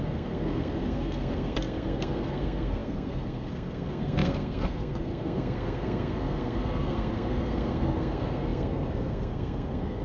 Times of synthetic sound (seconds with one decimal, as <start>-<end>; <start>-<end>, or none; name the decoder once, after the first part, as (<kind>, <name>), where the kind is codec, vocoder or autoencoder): 0.0-10.0 (codec, SNAC)